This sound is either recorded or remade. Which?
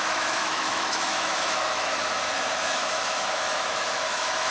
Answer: remade